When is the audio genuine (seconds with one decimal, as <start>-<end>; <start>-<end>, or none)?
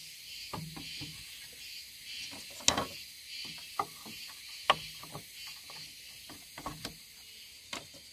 0.0-8.1